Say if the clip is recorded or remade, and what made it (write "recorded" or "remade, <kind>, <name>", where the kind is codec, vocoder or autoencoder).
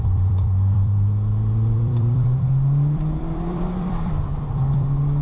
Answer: remade, vocoder, BigVGAN v2